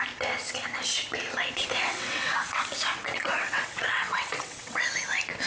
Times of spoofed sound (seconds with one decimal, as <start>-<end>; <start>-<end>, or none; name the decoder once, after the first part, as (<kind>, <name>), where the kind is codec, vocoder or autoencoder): 1.6-4.9 (vocoder, WaveNeXt)